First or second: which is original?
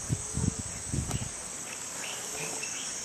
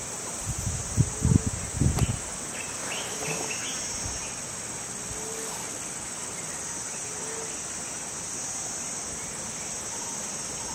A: second